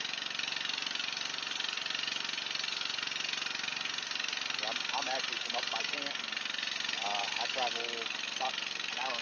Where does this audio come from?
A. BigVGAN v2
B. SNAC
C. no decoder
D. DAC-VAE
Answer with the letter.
C